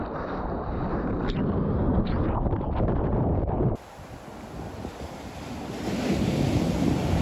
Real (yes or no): yes